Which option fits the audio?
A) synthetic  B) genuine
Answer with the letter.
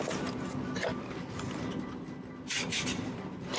B